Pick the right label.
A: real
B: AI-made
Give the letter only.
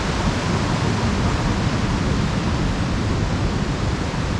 A